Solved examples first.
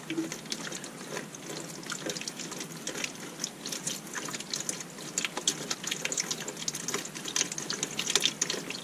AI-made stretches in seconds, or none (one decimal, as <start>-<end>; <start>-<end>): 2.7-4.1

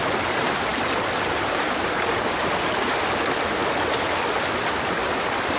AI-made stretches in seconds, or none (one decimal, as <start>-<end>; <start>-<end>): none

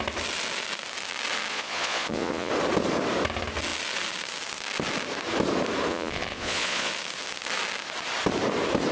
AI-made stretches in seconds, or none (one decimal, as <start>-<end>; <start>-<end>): 1.5-2.5; 5.9-6.9

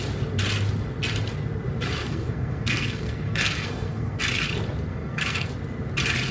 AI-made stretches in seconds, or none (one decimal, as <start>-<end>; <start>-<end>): 2.0-4.2; 4.9-5.5

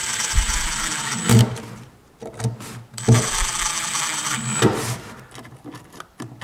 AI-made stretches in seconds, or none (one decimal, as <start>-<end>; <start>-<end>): 0.0-0.9; 4.2-5.7

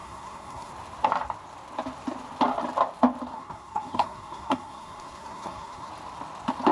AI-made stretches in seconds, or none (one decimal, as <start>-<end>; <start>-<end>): 0.0-0.7; 3.3-5.9